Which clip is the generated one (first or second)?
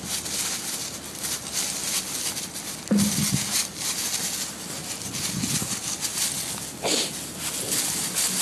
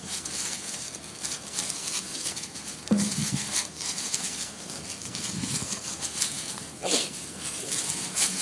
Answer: second